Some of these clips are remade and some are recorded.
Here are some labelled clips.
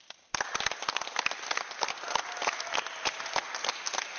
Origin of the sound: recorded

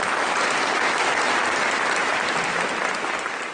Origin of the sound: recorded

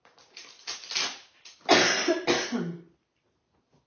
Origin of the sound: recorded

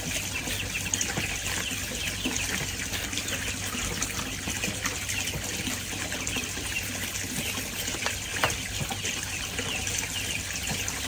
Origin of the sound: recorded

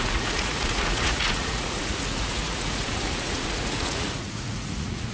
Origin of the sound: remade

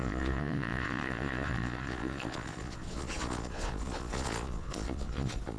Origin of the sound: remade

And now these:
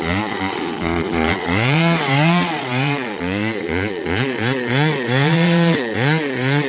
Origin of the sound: remade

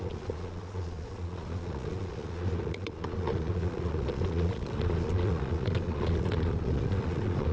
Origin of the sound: remade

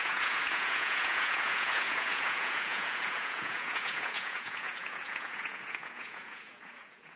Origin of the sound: remade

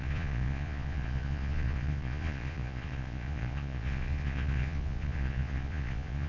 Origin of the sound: remade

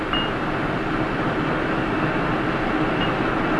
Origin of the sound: recorded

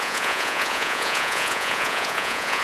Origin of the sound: remade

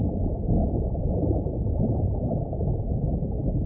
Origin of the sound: remade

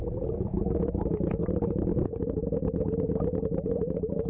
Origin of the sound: recorded